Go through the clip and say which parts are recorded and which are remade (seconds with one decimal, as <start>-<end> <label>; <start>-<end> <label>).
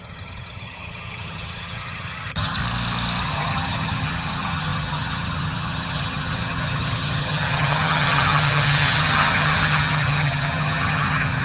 0.0-2.6 remade; 2.6-3.2 recorded; 3.2-11.4 remade